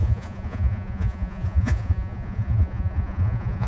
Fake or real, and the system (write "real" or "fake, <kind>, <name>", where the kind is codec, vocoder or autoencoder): fake, vocoder, Vocos